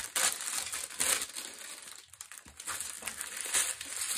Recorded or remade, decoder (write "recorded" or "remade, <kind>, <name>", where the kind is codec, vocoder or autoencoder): recorded